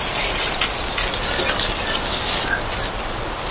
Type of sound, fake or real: real